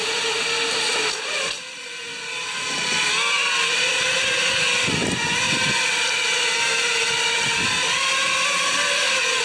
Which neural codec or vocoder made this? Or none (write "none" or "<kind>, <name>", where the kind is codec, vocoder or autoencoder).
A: none